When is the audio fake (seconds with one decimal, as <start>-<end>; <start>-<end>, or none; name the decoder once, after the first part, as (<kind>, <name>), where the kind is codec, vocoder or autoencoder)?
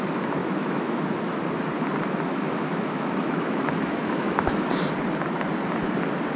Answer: 0.4-1.4 (autoencoder, DAC-VAE); 2.3-4.7